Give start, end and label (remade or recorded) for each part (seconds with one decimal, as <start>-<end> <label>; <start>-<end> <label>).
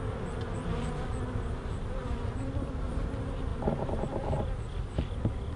0.0-5.6 recorded